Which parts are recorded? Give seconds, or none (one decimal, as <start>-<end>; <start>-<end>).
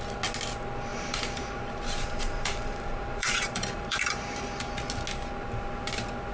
0.0-0.9; 4.7-6.3